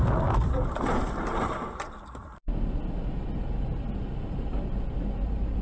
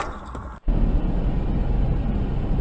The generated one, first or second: first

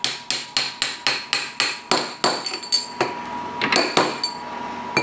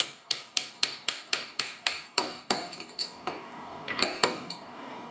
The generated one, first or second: second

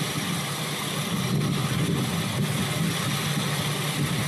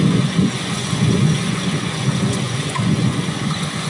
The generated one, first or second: second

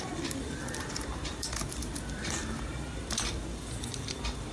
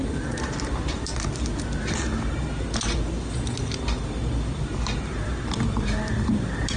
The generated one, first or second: first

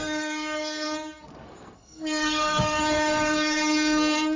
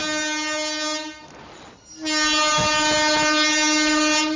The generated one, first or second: first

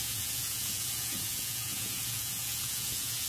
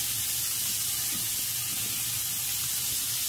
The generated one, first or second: first